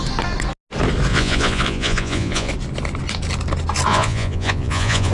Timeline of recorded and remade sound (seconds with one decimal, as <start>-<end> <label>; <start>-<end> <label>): 0.0-1.1 recorded; 1.1-2.5 remade; 2.5-3.9 recorded; 3.9-5.1 remade